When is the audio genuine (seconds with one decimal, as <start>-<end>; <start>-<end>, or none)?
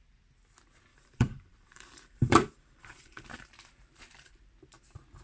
0.0-0.9; 3.5-5.2